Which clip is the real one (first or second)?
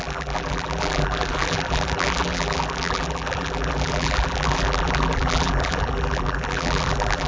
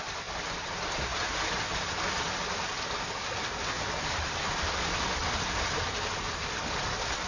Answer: second